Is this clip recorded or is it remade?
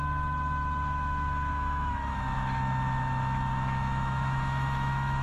remade